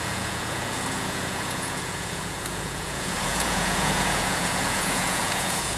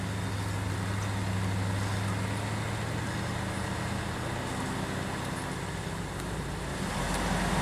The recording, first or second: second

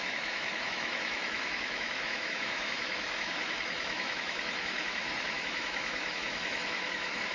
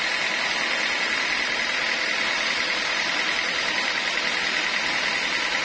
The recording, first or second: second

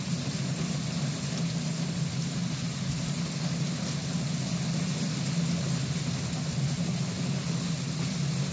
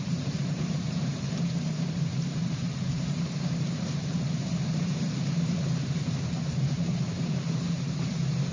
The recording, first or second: first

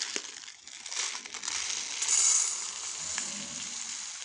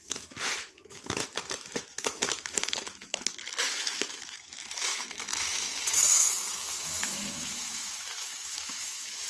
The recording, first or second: first